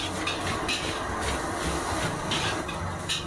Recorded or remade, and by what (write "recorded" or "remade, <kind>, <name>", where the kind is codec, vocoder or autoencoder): recorded